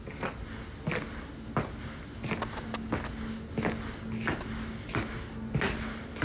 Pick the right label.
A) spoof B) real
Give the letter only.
B